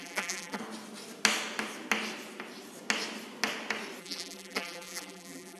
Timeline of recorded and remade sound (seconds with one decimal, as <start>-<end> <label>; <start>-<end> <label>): 0.0-0.6 remade; 0.6-4.0 recorded; 4.0-5.6 remade